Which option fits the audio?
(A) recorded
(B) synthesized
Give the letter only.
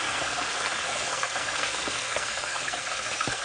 B